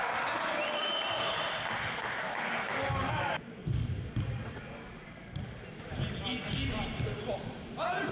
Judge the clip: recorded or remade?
recorded